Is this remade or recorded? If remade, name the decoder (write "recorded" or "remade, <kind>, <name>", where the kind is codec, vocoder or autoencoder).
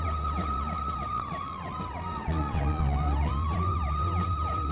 remade, vocoder, WaveNeXt